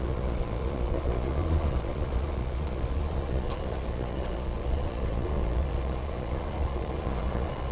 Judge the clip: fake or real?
fake